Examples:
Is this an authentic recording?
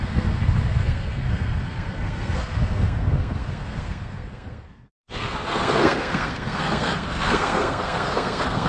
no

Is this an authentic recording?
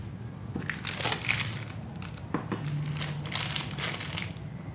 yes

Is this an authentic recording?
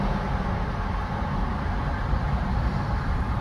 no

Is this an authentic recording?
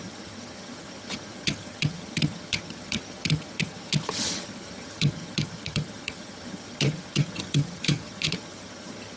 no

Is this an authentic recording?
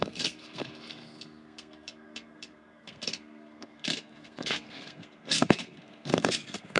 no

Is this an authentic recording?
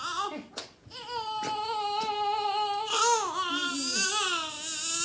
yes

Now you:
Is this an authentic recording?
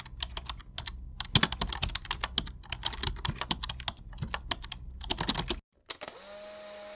yes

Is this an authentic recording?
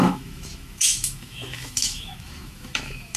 no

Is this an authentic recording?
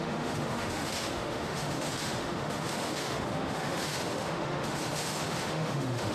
no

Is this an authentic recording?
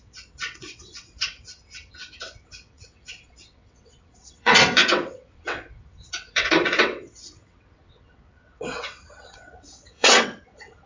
no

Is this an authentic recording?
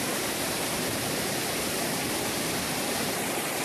yes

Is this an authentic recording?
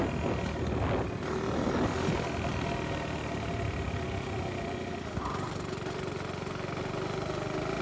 yes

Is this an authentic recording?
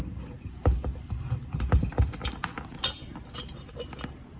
yes